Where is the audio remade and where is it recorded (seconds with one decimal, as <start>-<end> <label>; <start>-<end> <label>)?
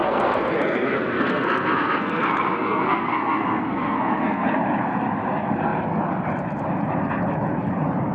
0.0-4.6 remade; 4.6-8.1 recorded